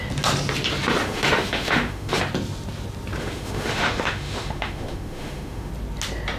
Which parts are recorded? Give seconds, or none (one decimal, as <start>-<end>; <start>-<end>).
0.0-1.0; 2.2-3.2; 5.7-6.4